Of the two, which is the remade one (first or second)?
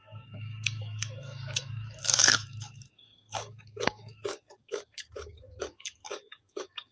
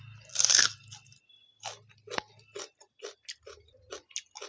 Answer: first